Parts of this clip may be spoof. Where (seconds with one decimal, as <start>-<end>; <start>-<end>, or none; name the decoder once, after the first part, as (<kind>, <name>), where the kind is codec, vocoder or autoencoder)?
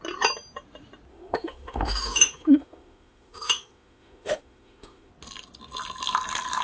1.1-5.1 (autoencoder, DAC-VAE)